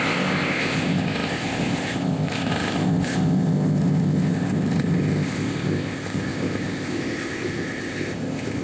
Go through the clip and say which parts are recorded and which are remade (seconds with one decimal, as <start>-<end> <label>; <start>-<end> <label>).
0.0-8.6 remade